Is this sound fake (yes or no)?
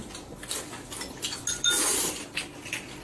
no